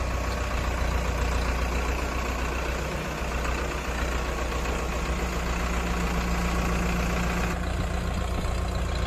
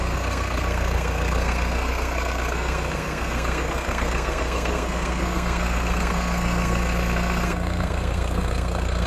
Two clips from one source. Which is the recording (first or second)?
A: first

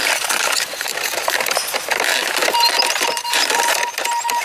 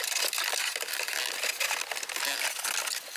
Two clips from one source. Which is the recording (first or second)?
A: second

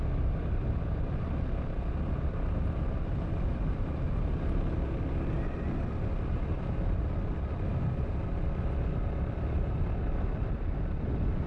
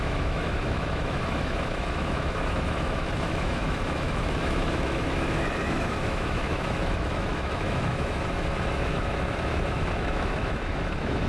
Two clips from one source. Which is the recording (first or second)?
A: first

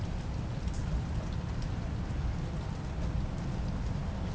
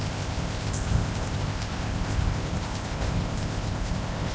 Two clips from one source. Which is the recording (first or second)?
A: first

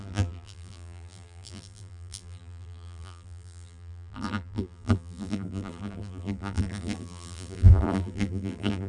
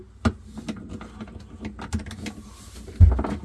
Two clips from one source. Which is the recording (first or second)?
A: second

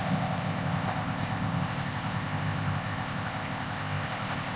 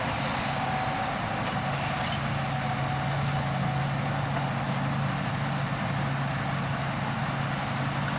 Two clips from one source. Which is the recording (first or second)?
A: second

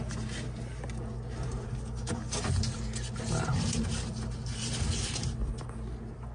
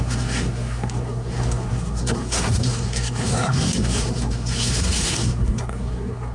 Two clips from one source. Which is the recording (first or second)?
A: first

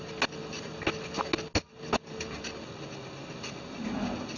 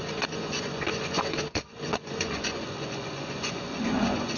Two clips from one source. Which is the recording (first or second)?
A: first